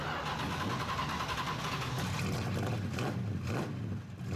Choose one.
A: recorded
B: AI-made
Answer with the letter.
A